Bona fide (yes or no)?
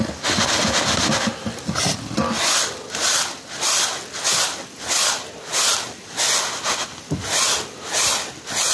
yes